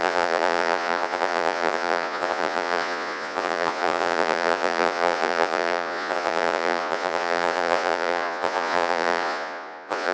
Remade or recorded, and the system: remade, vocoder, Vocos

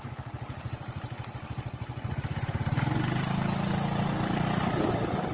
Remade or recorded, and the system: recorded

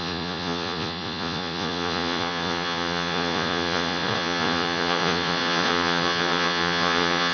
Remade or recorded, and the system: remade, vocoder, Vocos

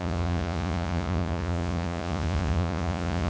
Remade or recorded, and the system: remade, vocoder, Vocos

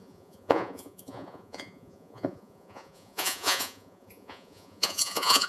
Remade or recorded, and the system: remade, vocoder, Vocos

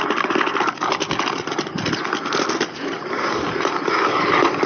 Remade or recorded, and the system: recorded